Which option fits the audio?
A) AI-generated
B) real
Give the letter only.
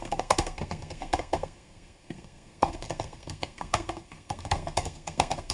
A